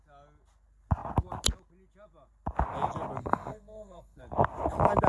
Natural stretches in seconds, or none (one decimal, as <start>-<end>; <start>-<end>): 0.0-3.2; 4.2-5.1